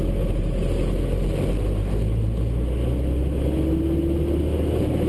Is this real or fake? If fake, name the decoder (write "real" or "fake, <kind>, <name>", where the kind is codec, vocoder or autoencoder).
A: real